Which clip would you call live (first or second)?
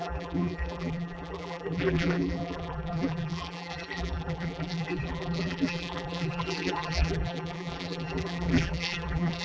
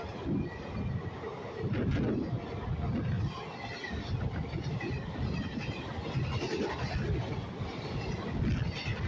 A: second